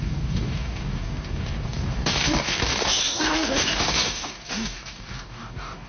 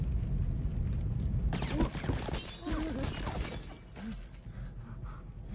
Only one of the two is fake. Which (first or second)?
first